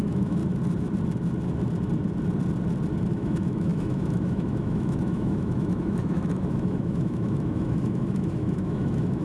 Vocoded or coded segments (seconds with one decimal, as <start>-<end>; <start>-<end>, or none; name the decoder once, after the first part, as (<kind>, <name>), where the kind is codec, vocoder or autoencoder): 0.0-0.4 (autoencoder, DAC-VAE); 3.1-9.2